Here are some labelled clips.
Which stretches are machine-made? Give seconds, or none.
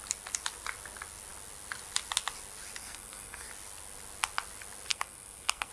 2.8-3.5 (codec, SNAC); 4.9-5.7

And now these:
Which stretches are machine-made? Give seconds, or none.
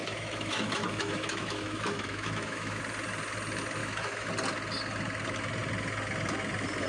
0.0-2.8 (autoencoder, DAC-VAE); 3.8-4.3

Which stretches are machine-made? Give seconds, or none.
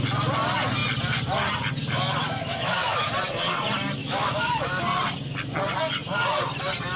2.2-3.1 (autoencoder, DAC-VAE); 4.0-4.8